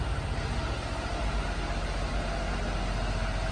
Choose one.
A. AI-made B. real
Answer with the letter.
B